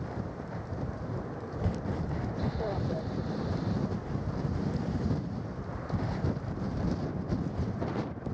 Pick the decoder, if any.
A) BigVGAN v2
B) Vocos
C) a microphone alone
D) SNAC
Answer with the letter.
A